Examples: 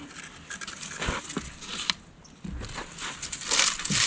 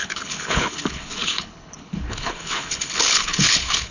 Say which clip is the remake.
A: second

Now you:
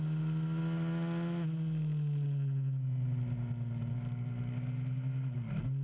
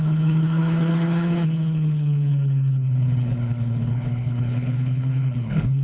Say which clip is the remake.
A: second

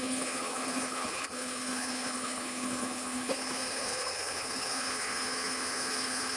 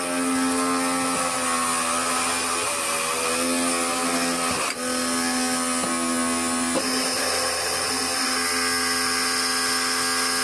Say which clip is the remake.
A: first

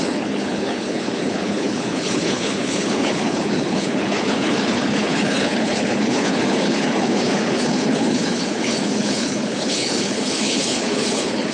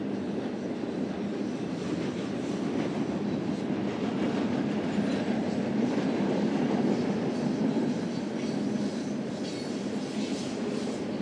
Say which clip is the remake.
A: first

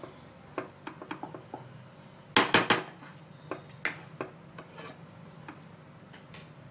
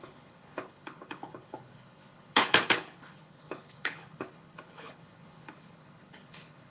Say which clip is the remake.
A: second